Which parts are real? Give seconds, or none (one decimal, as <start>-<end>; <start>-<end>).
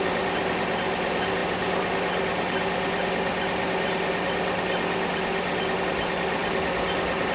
0.0-7.3